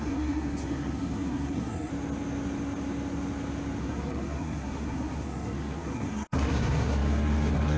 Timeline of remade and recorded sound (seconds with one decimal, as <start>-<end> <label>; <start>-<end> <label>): 0.0-1.9 remade; 1.9-3.8 recorded; 3.8-7.8 remade

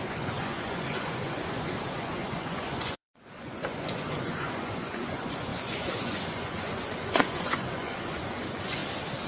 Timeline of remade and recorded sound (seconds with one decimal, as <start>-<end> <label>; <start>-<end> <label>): 0.0-8.8 remade; 8.8-9.3 recorded

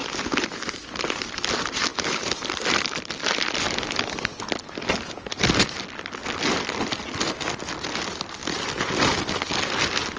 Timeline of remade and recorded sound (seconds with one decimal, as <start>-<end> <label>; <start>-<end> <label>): 0.0-1.5 remade; 1.5-1.9 recorded; 1.9-4.9 remade; 4.9-8.4 recorded; 8.4-9.5 remade; 9.5-10.2 recorded

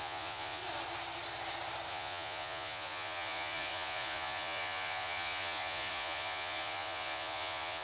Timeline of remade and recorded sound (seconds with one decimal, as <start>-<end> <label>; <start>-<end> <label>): 0.0-0.6 remade; 0.6-1.9 recorded; 1.9-7.8 remade

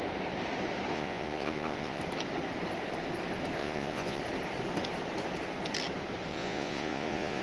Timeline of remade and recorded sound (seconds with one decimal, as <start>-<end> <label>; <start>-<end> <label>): 0.0-0.9 recorded; 0.9-2.0 remade; 2.0-3.6 recorded; 3.6-4.2 remade; 4.2-6.3 recorded; 6.3-7.4 remade

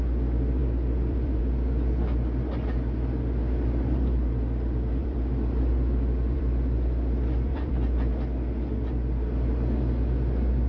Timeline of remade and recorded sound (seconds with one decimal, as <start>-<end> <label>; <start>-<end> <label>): 0.0-0.6 recorded; 0.6-1.4 remade; 1.4-5.0 recorded; 5.0-7.7 remade; 7.7-10.7 recorded